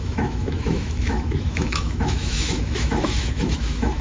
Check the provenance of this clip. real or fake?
fake